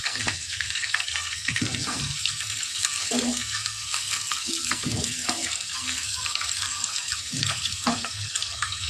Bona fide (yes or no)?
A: no